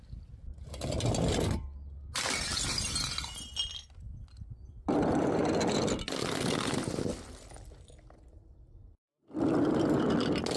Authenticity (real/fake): real